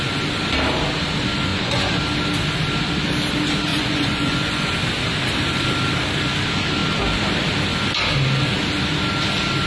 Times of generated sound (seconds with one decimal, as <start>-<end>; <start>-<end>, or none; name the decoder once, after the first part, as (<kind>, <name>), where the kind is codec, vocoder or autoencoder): 1.5-2.0 (vocoder, Vocos); 3.7-4.7